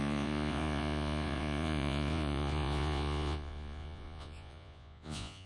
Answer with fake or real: fake